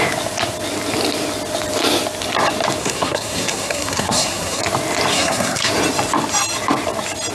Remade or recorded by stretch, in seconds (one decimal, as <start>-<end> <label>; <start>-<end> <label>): 0.0-2.8 recorded; 2.8-4.6 remade; 4.6-5.1 recorded; 5.1-5.7 remade; 5.7-7.3 recorded